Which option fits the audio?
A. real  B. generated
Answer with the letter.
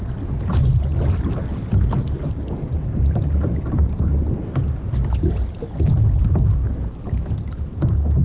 A